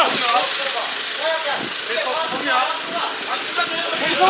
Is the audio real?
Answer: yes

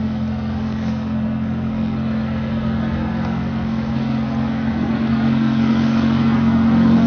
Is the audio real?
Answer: no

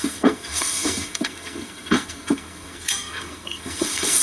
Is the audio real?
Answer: no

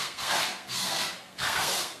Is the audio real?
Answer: no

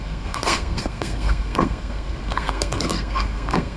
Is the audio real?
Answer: no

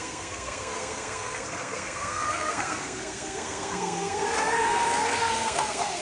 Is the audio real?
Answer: no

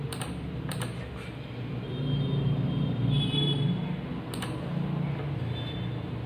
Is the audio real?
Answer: yes